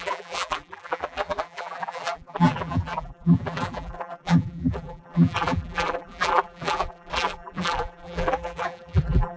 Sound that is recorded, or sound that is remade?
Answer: remade